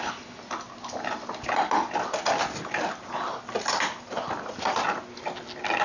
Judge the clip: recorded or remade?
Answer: recorded